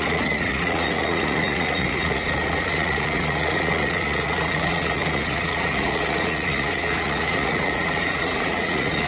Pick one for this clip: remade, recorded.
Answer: remade